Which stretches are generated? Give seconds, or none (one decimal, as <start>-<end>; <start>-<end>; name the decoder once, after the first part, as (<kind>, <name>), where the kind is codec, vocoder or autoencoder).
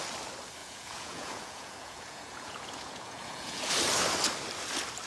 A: 0.6-3.7 (vocoder, Vocos)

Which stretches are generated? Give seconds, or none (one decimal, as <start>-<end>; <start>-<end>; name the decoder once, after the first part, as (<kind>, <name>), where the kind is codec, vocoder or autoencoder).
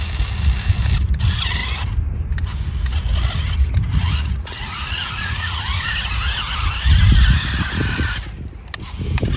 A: 4.0-5.8 (vocoder, Vocos)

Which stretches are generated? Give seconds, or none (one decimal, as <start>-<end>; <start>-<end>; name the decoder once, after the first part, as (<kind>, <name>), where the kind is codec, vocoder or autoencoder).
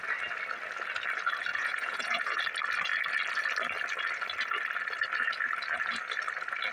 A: 1.5-2.4 (vocoder, Vocos)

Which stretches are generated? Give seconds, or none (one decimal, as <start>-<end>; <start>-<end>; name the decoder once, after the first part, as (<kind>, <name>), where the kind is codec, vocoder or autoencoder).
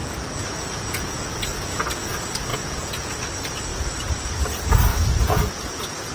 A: 0.0-2.1 (vocoder, Vocos); 2.5-3.1; 4.9-6.1